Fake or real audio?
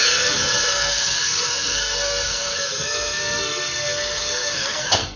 fake